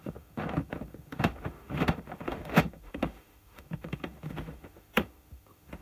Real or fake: fake